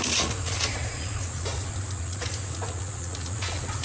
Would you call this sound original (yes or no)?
no